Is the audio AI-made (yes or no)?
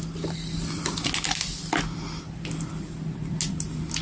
no